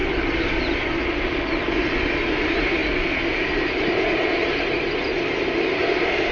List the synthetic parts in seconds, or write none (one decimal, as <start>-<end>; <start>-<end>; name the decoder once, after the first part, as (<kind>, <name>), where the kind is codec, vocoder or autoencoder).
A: none

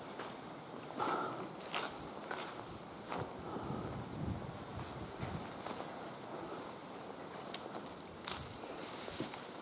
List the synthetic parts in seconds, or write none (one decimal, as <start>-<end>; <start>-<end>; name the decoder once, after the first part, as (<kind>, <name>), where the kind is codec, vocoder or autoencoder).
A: none

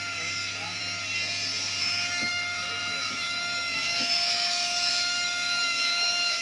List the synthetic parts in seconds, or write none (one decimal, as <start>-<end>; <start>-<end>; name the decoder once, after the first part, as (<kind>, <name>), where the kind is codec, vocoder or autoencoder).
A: 0.0-0.8 (autoencoder, DAC-VAE); 1.8-6.4

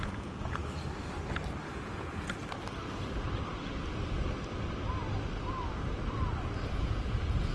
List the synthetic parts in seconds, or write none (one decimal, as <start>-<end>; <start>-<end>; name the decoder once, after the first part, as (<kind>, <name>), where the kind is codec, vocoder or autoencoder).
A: 0.0-0.6 (vocoder, Vocos); 1.7-2.4; 6.7-7.5

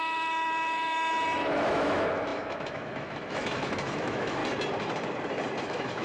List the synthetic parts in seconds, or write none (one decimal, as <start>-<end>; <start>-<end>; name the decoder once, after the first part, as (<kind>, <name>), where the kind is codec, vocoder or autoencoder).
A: 0.0-4.4 (autoencoder, DAC-VAE); 5.6-6.0